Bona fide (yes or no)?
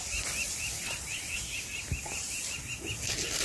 yes